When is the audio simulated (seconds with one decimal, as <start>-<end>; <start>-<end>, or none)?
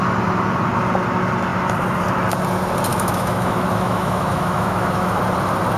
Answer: 2.9-5.2